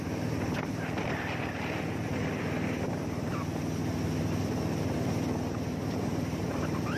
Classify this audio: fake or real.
fake